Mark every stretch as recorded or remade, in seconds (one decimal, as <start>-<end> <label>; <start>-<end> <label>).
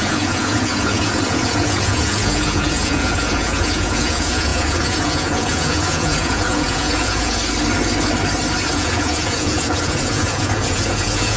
0.0-7.4 remade; 7.4-8.7 recorded; 8.7-11.4 remade